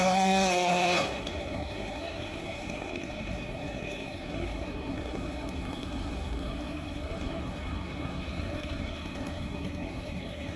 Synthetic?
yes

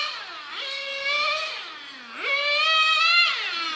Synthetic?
no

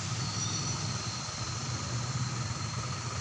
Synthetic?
no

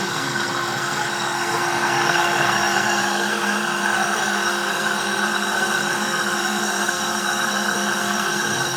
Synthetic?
yes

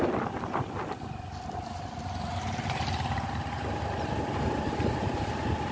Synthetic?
no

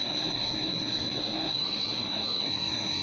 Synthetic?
yes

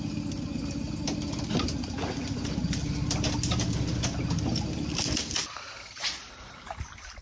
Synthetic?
no